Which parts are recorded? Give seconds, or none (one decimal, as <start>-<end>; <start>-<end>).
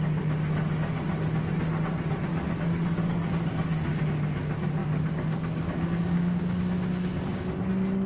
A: 0.0-2.3; 4.0-4.8; 6.4-8.1